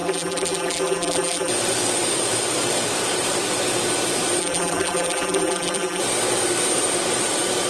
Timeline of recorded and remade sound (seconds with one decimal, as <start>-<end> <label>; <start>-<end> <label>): 0.0-1.5 remade; 1.5-4.4 recorded; 4.4-6.0 remade; 6.0-7.7 recorded